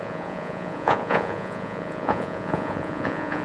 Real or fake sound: fake